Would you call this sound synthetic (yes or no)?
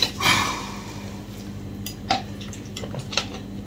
no